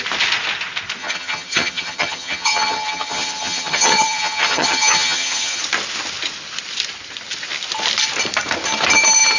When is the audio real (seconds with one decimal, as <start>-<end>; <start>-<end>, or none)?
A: 0.0-1.0; 5.6-9.4